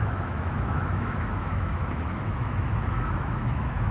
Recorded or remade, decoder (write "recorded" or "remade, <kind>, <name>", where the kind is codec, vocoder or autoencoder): remade, autoencoder, DAC-VAE